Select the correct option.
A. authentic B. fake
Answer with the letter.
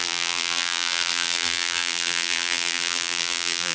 B